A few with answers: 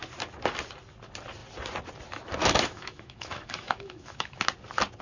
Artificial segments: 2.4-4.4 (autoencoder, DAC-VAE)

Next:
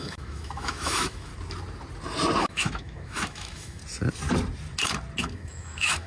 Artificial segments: 0.0-1.3 (autoencoder, DAC-VAE); 2.4-3.8; 5.2-6.1

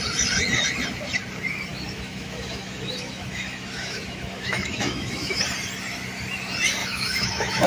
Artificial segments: 1.7-5.4 (autoencoder, DAC-VAE); 6.8-7.7

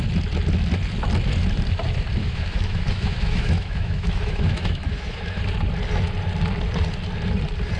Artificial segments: 2.2-5.4 (autoencoder, DAC-VAE)

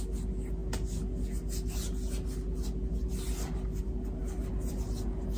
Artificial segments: none